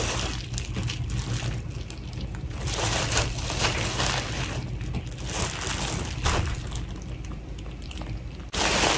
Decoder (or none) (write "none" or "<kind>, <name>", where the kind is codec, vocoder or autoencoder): none